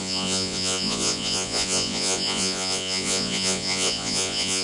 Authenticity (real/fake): fake